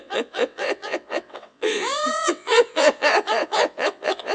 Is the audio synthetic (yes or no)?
yes